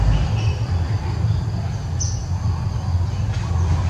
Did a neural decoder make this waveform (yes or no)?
no